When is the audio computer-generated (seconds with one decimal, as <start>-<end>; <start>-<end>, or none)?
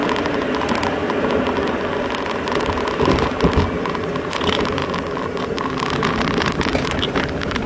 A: 3.8-4.8; 5.4-7.7